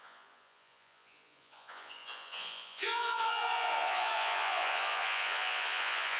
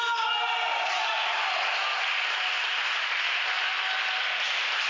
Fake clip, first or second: first